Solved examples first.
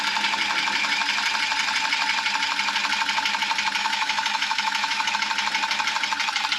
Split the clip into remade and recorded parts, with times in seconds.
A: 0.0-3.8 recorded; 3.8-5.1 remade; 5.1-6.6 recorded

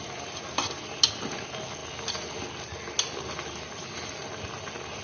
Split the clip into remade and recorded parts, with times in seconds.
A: 0.0-5.0 recorded

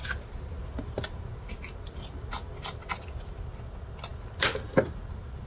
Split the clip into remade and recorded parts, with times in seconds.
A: 0.0-5.5 recorded

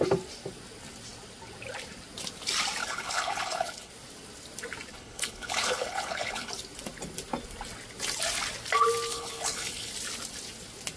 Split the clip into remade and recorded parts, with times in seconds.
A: 0.0-2.8 recorded; 2.8-3.9 remade; 3.9-4.9 recorded; 4.9-6.5 remade; 6.5-9.1 recorded; 9.1-9.9 remade; 9.9-11.0 recorded